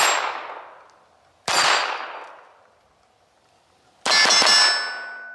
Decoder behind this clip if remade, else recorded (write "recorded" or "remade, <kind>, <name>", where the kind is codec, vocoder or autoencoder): recorded